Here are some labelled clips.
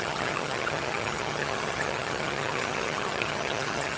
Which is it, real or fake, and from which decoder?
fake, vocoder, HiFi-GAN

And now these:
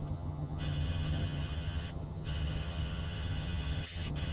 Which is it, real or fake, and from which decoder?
fake, vocoder, HiFi-GAN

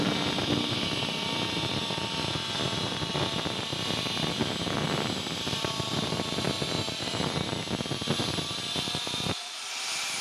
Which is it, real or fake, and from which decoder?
real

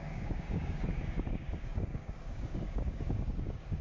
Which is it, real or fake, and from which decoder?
fake, codec, DAC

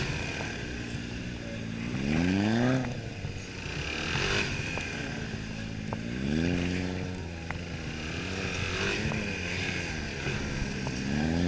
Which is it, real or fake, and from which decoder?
real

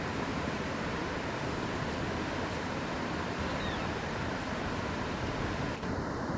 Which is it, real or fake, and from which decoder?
fake, vocoder, BigVGAN v2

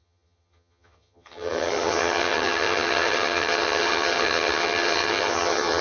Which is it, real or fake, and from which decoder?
fake, vocoder, HiFi-GAN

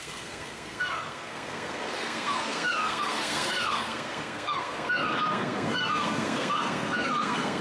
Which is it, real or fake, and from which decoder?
fake, codec, SNAC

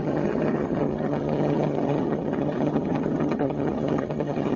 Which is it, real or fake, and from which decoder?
fake, vocoder, HiFi-GAN